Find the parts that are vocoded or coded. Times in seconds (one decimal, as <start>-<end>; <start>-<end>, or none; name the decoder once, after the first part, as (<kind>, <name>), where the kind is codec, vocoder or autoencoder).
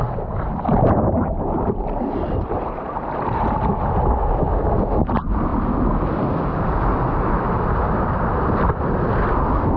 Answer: none